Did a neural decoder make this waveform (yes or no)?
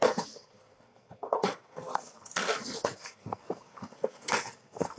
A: yes